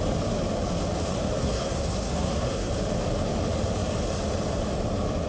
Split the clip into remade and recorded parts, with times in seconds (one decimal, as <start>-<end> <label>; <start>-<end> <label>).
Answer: 0.0-1.4 recorded; 1.4-2.7 remade; 2.7-5.3 recorded